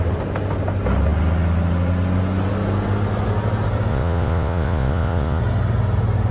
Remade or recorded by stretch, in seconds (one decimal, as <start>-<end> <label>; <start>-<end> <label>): 0.0-3.9 recorded; 3.9-5.4 remade; 5.4-6.3 recorded